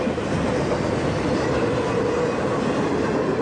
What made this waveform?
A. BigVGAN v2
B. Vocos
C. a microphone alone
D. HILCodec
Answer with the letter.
C